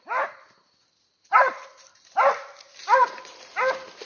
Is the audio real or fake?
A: real